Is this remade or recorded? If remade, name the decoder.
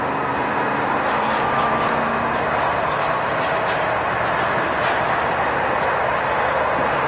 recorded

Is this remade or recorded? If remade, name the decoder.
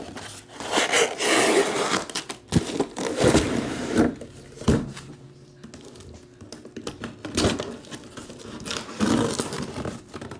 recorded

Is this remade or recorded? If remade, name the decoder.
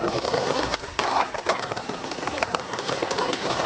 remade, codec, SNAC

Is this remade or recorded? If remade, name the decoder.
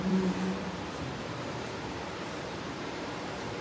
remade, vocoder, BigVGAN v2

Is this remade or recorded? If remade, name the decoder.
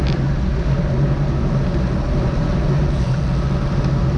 recorded